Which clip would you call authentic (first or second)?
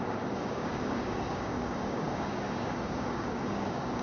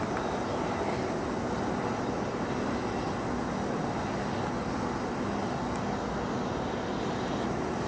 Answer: second